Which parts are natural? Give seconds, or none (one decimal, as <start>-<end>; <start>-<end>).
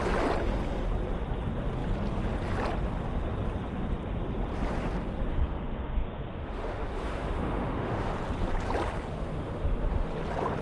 0.0-5.3; 8.1-9.1; 10.1-10.6